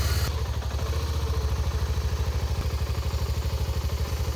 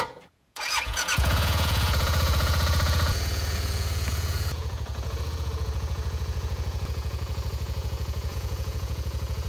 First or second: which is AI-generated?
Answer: second